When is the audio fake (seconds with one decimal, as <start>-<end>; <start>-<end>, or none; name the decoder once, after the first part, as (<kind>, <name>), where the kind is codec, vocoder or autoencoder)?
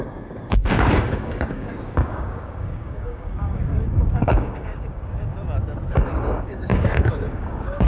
0.0-5.3 (codec, DAC); 5.9-7.9